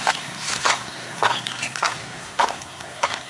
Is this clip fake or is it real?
fake